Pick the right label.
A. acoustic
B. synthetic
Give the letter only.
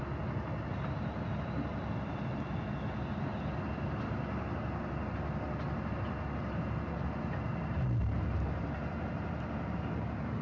A